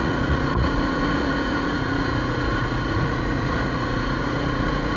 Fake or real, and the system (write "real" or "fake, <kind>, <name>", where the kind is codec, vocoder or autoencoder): fake, vocoder, Vocos